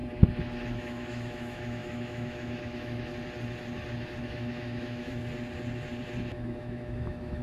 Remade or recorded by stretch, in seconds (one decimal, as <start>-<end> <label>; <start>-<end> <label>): 0.0-0.8 recorded; 0.8-3.1 remade; 3.1-4.2 recorded; 4.2-5.2 remade; 5.2-6.3 recorded; 6.3-7.4 remade